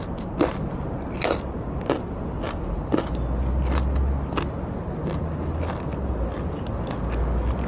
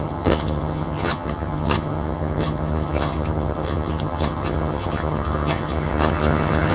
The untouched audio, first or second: first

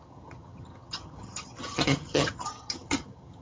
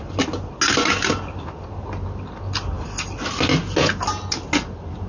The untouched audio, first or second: second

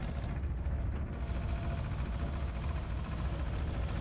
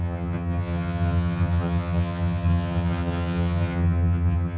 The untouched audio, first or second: first